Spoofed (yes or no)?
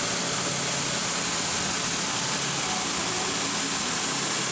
no